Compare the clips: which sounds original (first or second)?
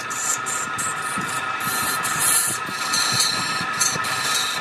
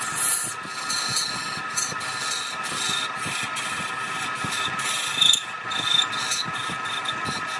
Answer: second